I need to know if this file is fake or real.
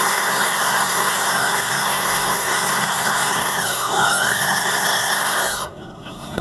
fake